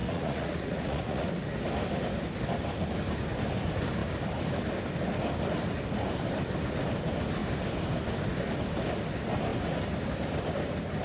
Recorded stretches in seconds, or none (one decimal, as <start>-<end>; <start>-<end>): 1.3-11.0